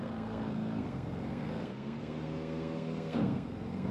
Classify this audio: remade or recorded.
remade